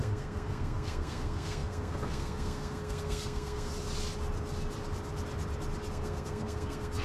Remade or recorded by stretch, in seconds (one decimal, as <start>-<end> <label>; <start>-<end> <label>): 0.0-3.7 remade; 3.7-5.9 recorded; 5.9-7.0 remade